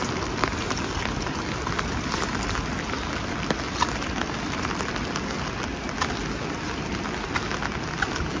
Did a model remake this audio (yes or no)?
no